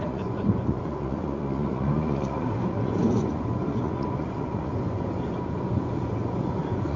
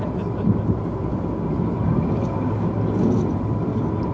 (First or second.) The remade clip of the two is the first